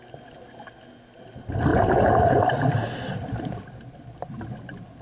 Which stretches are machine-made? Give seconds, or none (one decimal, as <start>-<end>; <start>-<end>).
1.7-4.5